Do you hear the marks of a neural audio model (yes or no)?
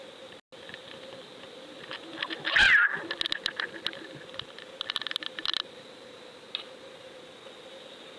no